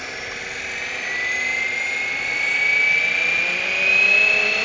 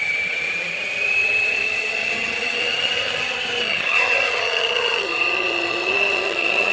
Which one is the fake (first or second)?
second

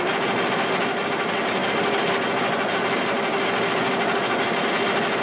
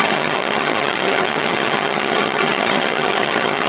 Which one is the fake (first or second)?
second